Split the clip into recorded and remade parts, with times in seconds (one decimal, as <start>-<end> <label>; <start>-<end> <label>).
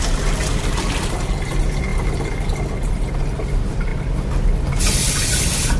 0.0-5.8 recorded